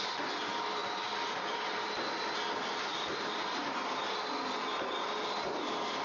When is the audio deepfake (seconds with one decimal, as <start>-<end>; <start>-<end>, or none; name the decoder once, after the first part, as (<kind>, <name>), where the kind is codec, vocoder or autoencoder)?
0.8-1.4 (vocoder, BigVGAN v2)